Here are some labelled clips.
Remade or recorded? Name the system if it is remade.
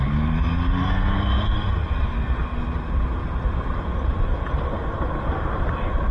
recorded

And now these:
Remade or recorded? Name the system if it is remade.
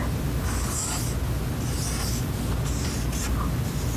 recorded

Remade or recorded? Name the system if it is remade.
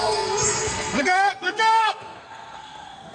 remade, codec, SNAC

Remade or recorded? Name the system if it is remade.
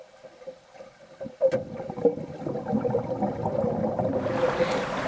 recorded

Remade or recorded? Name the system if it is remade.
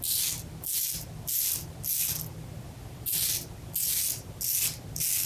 recorded